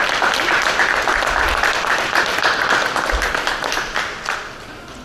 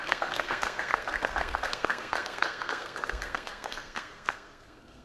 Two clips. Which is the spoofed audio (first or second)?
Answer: second